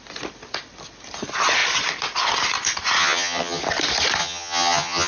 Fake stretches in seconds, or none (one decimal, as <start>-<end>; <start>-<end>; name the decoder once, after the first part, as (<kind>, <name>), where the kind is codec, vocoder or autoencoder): 3.0-3.6 (vocoder, HiFi-GAN); 4.2-5.1